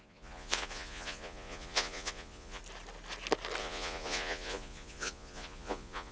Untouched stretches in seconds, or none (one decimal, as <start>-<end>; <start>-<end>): 2.6-3.6